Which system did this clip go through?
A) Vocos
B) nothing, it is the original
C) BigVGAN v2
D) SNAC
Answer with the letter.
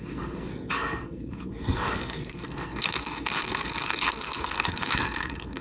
D